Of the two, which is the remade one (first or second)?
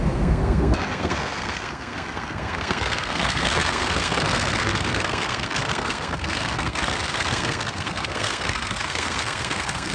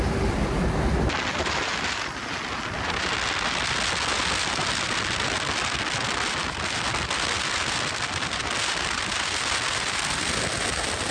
first